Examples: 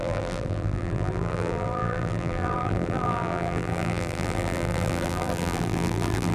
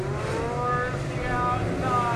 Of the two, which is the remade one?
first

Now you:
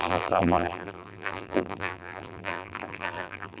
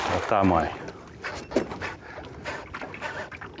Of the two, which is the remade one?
first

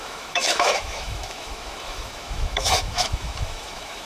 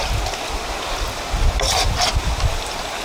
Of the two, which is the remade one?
first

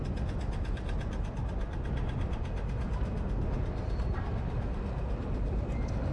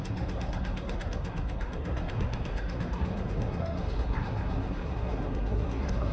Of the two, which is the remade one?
second